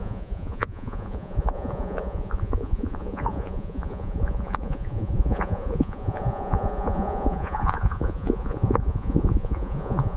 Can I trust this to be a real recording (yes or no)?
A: no